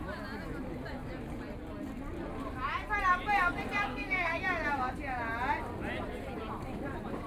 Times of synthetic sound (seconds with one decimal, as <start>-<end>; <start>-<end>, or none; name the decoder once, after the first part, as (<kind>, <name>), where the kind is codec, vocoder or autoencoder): 3.9-4.4 (codec, SNAC)